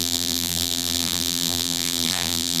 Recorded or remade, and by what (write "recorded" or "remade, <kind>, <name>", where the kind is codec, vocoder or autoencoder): remade, vocoder, BigVGAN v2